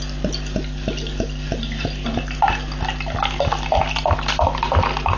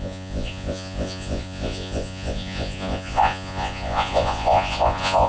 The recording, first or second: first